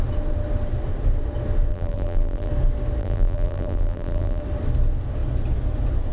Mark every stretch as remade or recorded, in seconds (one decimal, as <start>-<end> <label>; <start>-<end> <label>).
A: 0.0-1.7 recorded; 1.7-2.5 remade; 2.5-3.0 recorded; 3.0-4.4 remade; 4.4-6.1 recorded